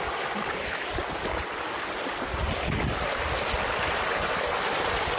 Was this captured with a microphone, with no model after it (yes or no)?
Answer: yes